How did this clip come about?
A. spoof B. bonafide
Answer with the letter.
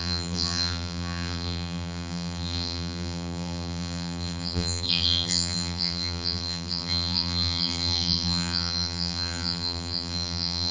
A